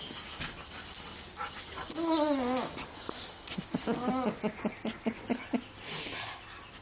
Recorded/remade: recorded